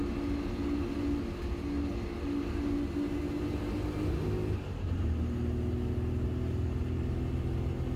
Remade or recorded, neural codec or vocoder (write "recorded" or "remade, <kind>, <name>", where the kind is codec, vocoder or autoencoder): recorded